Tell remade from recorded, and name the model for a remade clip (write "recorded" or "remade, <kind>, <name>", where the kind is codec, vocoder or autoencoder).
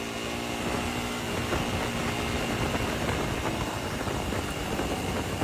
recorded